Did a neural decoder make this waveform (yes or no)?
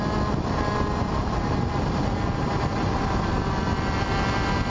no